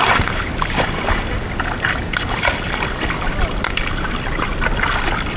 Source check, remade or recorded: recorded